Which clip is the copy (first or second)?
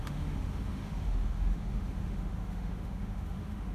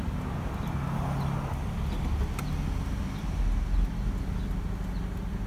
first